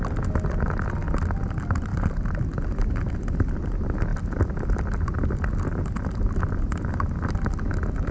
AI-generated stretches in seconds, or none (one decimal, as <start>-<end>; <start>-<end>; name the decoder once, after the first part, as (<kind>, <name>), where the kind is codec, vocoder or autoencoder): none